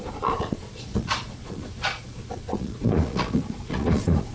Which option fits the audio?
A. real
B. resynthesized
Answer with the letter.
B